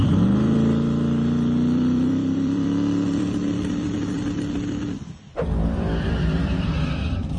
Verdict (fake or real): fake